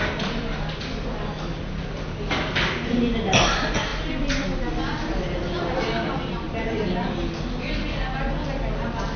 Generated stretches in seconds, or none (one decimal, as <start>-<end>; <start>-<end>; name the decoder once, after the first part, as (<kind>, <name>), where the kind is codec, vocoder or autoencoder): none